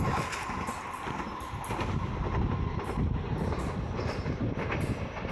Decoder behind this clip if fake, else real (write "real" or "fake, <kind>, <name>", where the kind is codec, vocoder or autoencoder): real